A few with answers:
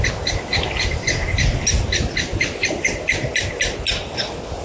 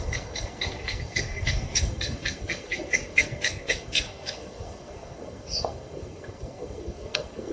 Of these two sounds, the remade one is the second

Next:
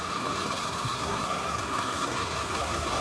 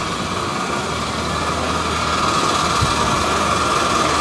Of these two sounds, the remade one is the first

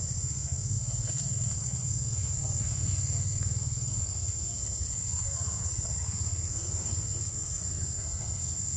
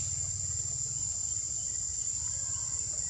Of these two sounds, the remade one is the first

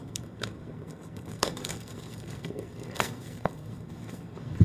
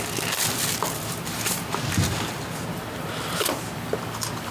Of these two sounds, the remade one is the first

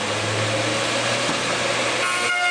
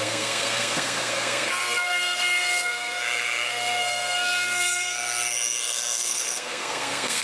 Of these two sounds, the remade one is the second